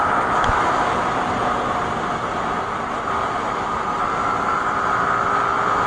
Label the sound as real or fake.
real